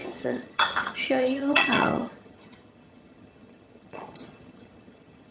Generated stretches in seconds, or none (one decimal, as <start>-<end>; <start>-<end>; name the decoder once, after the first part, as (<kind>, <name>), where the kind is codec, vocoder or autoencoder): 0.0-5.3 (vocoder, HiFi-GAN)